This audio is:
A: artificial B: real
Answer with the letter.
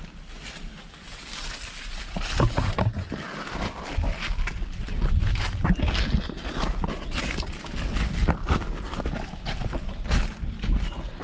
B